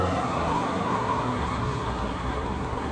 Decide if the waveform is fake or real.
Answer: fake